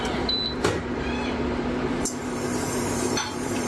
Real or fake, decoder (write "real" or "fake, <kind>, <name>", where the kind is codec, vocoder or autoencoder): fake, vocoder, BigVGAN v2